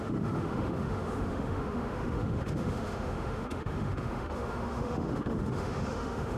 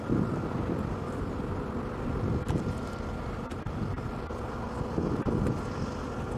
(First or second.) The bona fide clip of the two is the second